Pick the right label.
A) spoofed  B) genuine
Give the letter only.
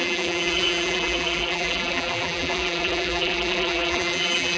A